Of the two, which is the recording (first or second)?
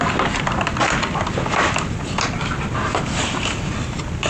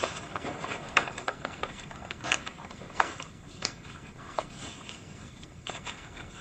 first